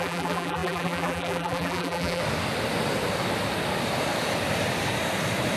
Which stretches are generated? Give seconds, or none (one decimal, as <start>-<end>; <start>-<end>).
0.0-2.2